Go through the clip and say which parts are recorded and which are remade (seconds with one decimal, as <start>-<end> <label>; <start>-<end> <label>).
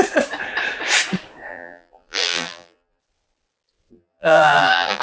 0.0-1.5 recorded; 1.5-3.0 remade; 3.0-3.9 recorded; 3.9-5.0 remade